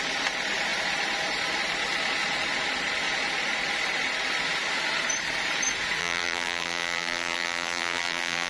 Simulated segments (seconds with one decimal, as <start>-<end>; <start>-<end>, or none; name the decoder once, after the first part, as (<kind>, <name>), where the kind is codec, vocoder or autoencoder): 6.0-8.5 (vocoder, BigVGAN v2)